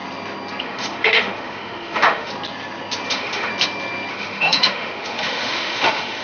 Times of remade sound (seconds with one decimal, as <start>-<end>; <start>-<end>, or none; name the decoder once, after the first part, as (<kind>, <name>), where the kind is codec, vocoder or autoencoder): 0.6-2.3 (autoencoder, DAC-VAE); 3.1-3.5; 4.1-6.2